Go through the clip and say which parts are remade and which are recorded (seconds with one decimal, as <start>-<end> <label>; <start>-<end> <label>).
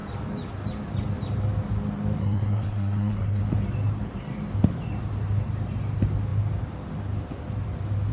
0.0-2.2 recorded; 2.2-3.4 remade; 3.4-8.1 recorded